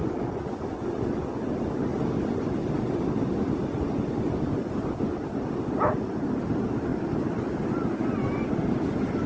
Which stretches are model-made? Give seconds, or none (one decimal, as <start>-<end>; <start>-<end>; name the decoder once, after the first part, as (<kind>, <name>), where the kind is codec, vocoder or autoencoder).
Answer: 0.0-1.4 (vocoder, Vocos)